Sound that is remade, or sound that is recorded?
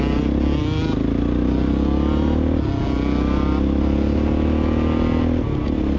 recorded